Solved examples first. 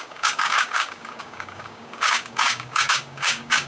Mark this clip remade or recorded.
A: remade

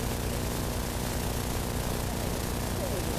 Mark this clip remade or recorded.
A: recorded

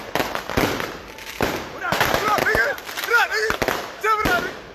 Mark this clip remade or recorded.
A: recorded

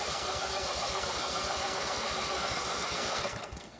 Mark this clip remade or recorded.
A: remade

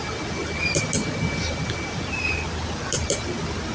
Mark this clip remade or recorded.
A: recorded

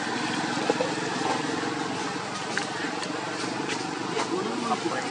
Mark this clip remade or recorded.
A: recorded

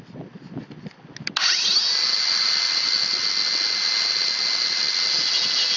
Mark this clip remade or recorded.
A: recorded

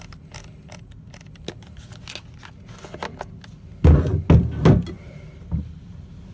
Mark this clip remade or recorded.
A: recorded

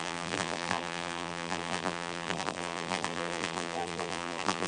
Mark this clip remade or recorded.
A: remade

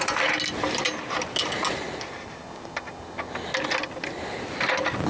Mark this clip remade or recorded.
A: recorded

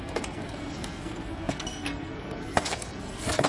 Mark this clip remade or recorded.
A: remade